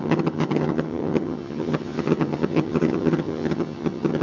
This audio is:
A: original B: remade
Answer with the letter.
B